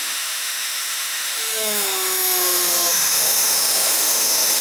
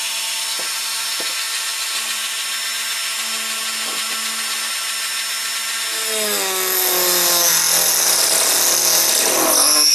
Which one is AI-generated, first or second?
first